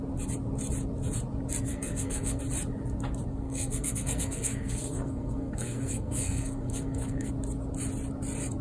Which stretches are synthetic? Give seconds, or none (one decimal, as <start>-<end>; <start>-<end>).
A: 1.7-2.4; 3.3-7.3